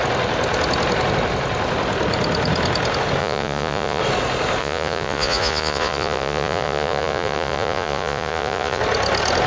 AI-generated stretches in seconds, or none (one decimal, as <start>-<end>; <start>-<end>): 3.2-4.0; 4.6-8.8